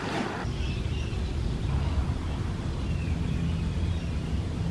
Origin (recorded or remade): recorded